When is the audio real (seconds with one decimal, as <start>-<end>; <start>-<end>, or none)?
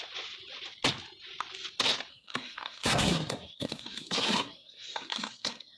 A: 0.0-2.1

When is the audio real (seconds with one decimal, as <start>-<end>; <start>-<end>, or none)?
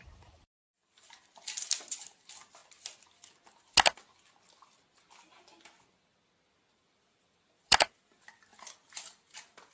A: 2.6-6.7; 8.5-9.7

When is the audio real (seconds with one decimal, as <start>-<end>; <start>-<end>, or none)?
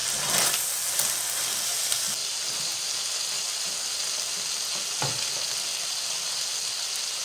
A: 0.0-7.2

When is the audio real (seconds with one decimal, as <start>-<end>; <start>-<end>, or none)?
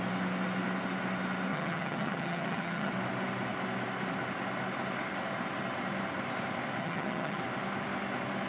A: 0.0-1.5; 2.9-6.8; 7.4-8.5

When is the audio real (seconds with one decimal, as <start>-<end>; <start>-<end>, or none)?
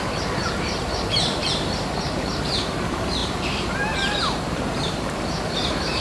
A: none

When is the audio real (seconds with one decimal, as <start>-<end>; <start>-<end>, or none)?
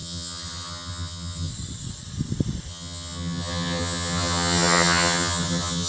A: 1.5-2.7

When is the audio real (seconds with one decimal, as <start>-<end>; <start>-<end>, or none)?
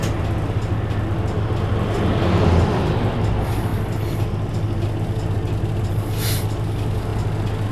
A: 0.0-7.7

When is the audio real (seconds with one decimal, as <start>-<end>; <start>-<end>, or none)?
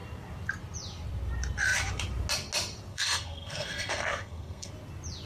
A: 0.0-2.9; 4.7-5.3